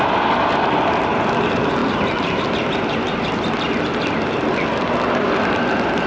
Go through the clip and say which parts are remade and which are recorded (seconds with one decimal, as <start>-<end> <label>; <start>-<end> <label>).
0.0-6.1 recorded